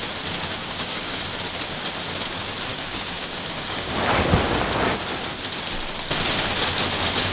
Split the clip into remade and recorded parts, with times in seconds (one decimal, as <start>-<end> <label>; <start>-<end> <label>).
0.0-0.6 recorded; 0.6-1.2 remade; 1.2-2.7 recorded; 2.7-3.9 remade; 3.9-7.3 recorded